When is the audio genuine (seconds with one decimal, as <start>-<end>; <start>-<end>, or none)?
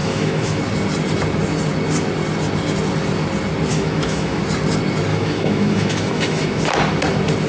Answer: 0.6-3.7; 4.4-5.1; 6.6-7.5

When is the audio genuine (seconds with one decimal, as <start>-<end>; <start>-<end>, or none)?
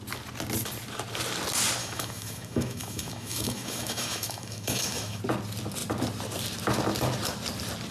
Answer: 0.0-1.8; 5.2-7.9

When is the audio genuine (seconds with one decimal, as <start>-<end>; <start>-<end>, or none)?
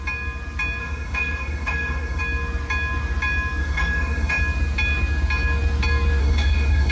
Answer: 0.0-0.8; 2.2-3.6; 4.4-6.2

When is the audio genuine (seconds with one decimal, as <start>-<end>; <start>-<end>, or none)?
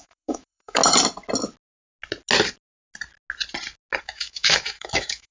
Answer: 0.8-4.0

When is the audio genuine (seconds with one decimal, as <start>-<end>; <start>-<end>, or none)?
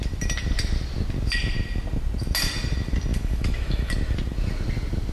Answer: 0.0-3.1; 3.9-5.1